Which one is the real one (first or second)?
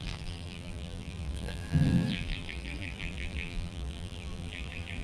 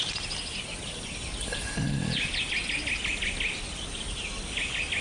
second